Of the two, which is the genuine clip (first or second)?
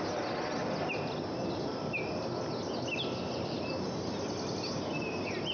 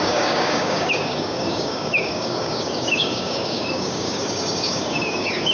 first